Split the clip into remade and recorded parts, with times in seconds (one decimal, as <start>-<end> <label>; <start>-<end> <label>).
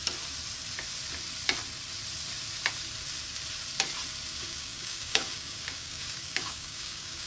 0.0-4.3 recorded; 4.3-7.3 remade